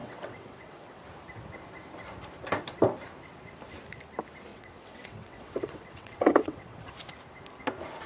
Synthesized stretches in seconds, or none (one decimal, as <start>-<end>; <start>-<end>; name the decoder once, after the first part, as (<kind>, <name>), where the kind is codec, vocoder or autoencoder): 0.0-1.0 (vocoder, WaveNeXt); 4.5-6.9